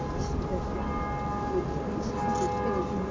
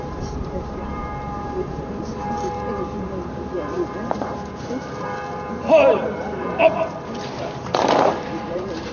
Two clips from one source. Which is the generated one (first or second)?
second